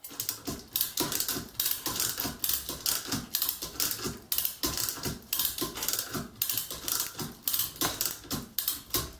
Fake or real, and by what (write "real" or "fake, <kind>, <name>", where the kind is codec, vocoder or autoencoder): real